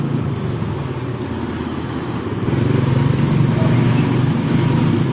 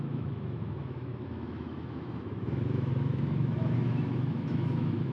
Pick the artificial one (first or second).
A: second